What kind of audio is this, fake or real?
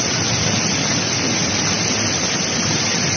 real